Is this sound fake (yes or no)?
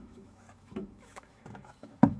yes